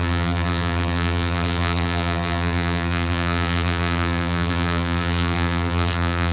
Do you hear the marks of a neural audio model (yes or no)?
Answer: yes